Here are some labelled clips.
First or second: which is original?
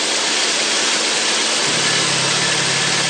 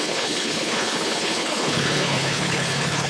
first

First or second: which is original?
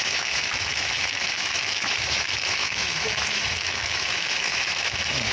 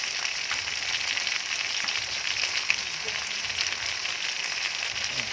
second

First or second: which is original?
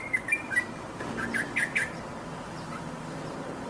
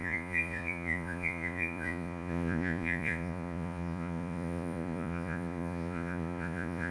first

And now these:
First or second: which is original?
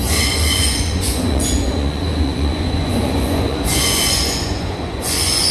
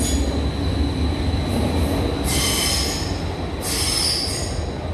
second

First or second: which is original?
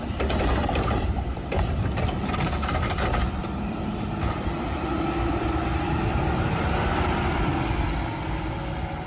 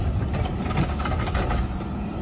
second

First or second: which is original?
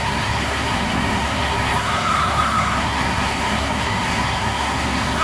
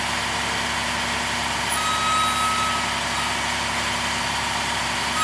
second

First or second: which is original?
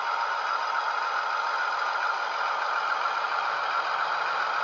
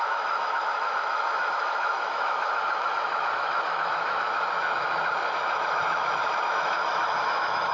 first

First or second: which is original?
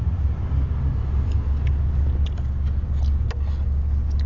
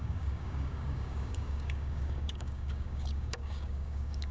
first